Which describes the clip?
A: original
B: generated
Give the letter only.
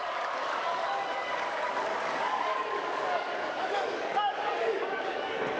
B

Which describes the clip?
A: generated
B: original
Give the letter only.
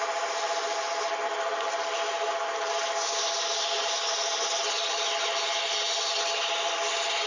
B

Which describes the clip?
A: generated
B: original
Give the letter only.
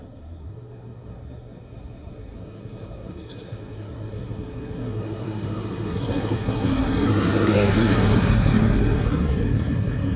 A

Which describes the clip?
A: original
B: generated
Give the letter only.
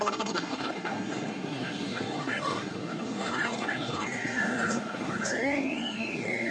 B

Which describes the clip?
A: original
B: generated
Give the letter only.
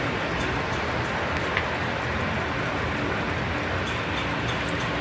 A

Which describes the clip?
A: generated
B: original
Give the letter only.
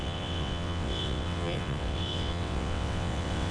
A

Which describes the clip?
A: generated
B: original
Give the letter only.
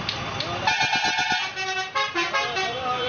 B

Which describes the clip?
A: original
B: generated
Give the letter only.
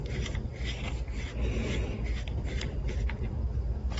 A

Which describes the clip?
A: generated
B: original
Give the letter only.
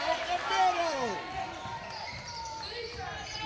B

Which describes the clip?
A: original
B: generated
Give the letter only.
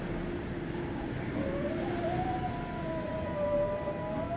A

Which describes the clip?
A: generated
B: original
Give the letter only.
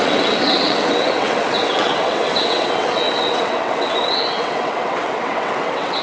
A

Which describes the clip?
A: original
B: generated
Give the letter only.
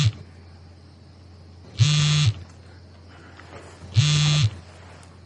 A